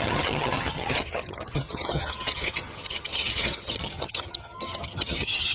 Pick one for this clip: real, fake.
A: fake